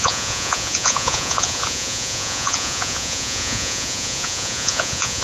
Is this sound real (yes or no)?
no